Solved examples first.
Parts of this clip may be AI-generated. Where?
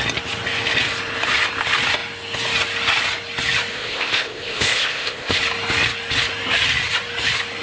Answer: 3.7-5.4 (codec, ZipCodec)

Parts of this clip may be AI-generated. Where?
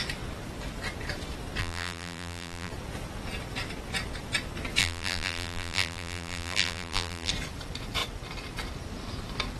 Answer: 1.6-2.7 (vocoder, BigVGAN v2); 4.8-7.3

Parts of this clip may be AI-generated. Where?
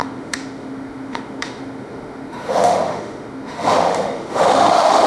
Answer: 0.0-5.1 (autoencoder, DAC-VAE)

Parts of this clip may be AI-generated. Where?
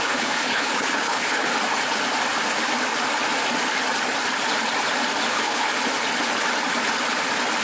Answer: 0.0-1.5 (codec, HILCodec); 5.3-5.7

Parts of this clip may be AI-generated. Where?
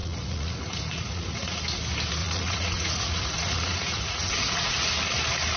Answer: 0.0-1.6 (vocoder, Vocos); 2.2-4.9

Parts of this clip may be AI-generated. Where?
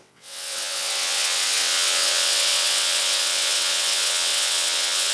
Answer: 0.0-5.1 (vocoder, WaveNeXt)